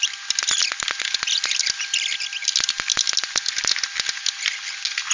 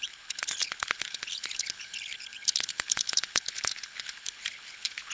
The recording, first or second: first